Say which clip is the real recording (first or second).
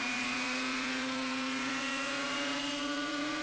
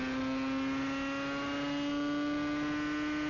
second